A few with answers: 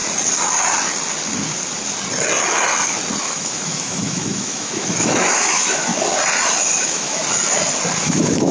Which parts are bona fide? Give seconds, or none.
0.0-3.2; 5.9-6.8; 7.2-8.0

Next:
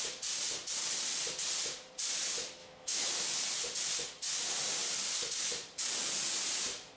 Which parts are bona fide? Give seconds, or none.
0.0-2.6; 3.1-7.0

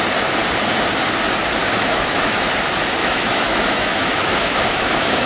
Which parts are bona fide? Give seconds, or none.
0.0-1.6; 2.5-3.0

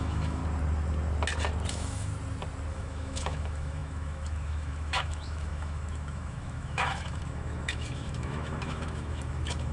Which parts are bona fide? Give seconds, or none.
0.4-1.7; 2.1-2.7